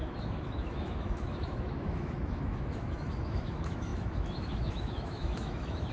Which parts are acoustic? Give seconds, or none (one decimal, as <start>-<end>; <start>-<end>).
none